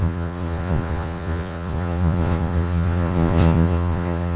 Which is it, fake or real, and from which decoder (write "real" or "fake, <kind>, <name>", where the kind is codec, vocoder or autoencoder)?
fake, vocoder, Vocos